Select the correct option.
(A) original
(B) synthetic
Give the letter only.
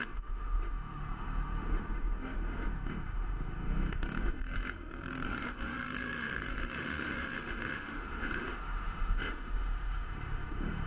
B